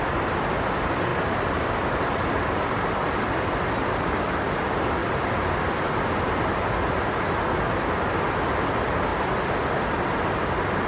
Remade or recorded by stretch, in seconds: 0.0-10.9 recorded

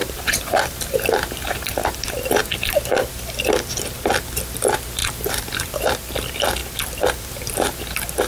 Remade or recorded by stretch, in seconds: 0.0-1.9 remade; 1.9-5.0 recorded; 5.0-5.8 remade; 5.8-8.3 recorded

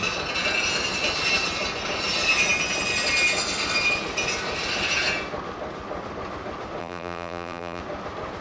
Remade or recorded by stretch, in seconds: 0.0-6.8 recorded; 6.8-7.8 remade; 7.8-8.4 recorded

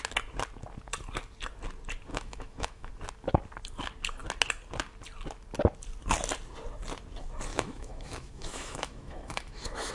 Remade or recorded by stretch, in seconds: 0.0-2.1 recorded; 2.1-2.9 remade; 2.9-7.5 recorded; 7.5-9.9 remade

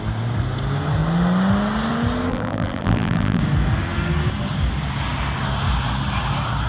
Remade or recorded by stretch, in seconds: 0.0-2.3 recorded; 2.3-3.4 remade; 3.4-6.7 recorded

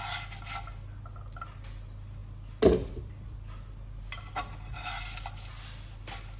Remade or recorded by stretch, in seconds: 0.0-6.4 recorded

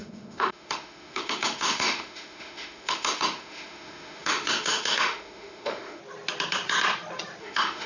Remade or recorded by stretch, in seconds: 0.0-6.0 remade; 6.0-7.4 recorded; 7.4-7.9 remade